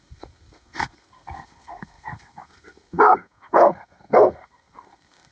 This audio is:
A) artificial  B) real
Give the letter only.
A